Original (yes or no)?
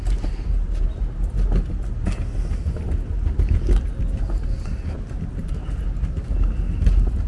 yes